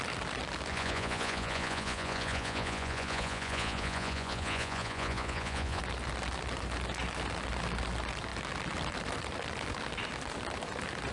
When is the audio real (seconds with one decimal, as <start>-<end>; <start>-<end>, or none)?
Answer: 0.0-0.7; 5.8-11.1